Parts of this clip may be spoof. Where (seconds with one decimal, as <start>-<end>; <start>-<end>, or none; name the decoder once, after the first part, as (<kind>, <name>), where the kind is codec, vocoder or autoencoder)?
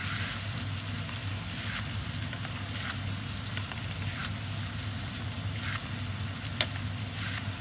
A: none